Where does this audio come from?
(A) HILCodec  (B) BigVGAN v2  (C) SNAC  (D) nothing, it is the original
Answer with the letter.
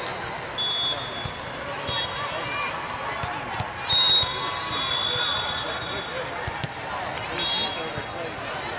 D